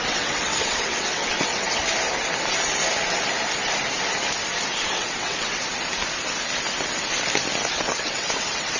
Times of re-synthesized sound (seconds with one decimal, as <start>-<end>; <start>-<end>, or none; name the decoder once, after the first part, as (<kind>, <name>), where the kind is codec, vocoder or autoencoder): 0.0-1.8 (vocoder, WaveNeXt); 4.9-5.6; 7.7-8.8